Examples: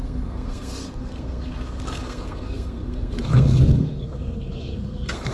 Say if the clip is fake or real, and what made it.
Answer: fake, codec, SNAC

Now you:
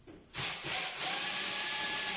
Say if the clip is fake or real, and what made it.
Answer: fake, vocoder, BigVGAN v2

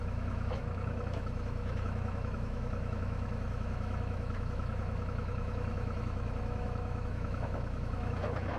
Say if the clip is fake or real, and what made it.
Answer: fake, autoencoder, DAC-VAE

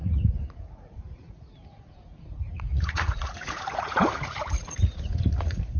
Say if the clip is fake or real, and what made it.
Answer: fake, vocoder, Vocos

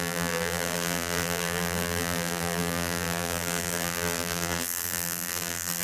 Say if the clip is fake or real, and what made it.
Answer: fake, vocoder, BigVGAN v2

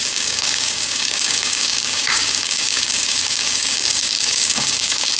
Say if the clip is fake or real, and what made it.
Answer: fake, codec, DAC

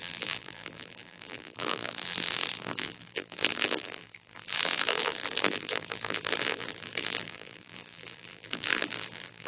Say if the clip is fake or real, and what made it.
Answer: fake, vocoder, BigVGAN v2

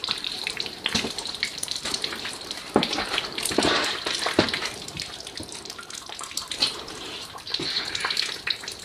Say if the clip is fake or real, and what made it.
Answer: fake, vocoder, BigVGAN v2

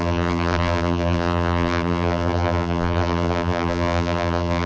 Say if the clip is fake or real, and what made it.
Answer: fake, vocoder, BigVGAN v2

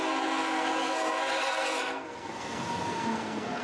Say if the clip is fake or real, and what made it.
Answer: fake, codec, SNAC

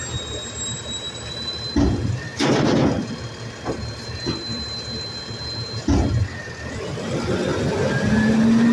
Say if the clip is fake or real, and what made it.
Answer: real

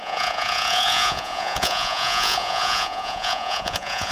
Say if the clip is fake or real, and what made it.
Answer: fake, vocoder, Vocos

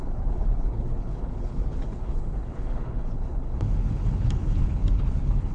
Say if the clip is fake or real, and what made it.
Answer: fake, codec, HILCodec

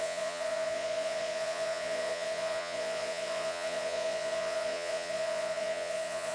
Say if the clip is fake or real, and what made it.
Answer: fake, vocoder, Vocos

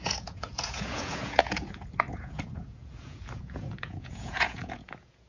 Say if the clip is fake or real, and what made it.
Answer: fake, vocoder, Vocos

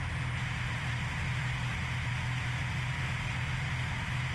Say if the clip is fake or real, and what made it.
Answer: real